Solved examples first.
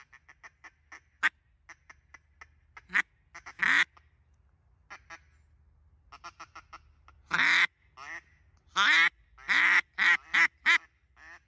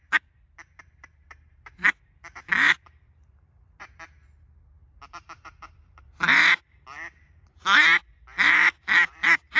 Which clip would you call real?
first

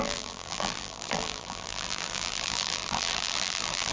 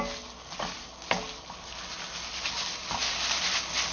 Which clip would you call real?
second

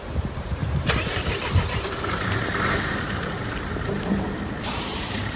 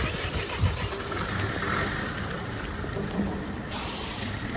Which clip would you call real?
second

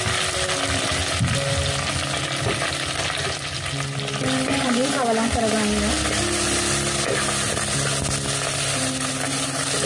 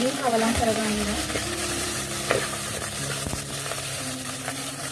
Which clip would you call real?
first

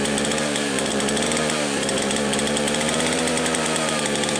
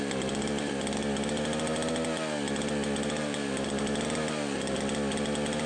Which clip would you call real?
second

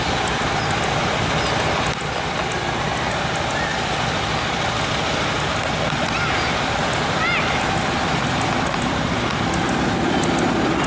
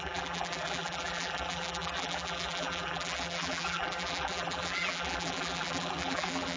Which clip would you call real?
first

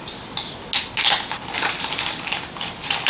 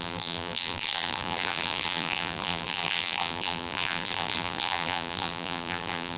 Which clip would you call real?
first